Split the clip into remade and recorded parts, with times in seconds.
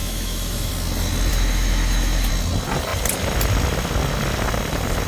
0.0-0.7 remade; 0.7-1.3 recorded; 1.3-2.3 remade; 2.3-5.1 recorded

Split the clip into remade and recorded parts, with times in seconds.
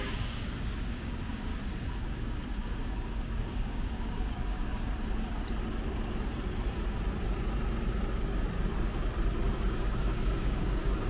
0.0-1.5 remade; 1.5-2.1 recorded; 2.1-4.7 remade; 4.7-9.5 recorded; 9.5-11.1 remade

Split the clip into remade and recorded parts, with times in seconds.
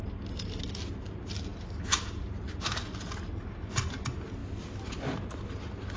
0.0-6.0 recorded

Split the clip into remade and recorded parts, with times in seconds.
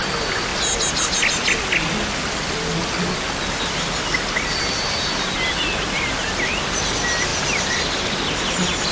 0.0-8.9 recorded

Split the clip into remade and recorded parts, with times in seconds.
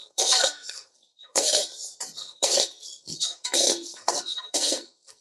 0.0-1.6 remade; 1.6-2.2 recorded; 2.2-5.2 remade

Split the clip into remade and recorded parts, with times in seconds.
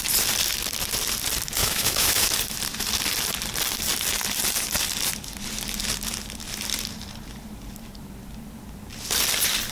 0.0-1.6 recorded; 1.6-2.3 remade; 2.3-9.7 recorded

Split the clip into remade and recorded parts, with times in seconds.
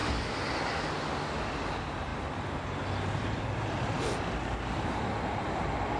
0.0-6.0 recorded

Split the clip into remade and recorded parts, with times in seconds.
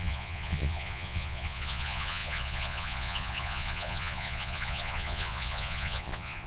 0.0-6.5 remade